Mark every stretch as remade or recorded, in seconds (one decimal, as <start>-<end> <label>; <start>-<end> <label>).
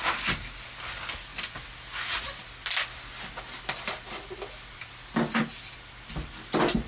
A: 0.0-6.9 recorded